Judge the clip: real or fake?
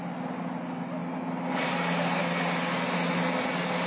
real